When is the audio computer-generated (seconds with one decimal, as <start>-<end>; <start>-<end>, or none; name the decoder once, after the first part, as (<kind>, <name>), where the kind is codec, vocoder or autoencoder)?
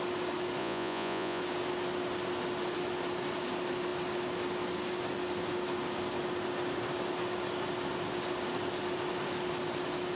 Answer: 0.6-1.4 (vocoder, Vocos)